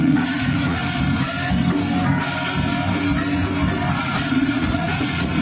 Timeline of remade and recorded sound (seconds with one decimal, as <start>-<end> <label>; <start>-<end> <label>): 0.0-0.8 remade; 0.8-4.0 recorded; 4.0-5.4 remade